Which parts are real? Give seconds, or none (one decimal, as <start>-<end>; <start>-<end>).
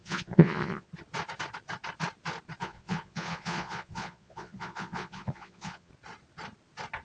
0.9-2.6; 5.9-7.0